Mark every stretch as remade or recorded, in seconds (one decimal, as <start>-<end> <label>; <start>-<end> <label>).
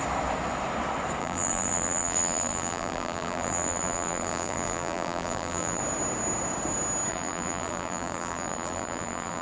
0.0-1.2 recorded; 1.2-5.8 remade; 5.8-7.1 recorded; 7.1-9.4 remade